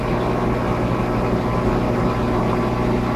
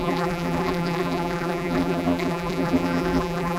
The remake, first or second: second